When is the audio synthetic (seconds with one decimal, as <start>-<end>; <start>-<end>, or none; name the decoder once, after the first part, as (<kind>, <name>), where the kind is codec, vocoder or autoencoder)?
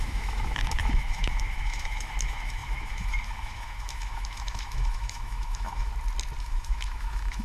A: 0.0-5.9 (autoencoder, DAC-VAE); 6.4-7.4